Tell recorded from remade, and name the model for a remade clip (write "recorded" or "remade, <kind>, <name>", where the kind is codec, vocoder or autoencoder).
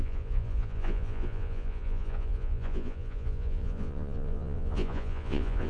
remade, vocoder, Vocos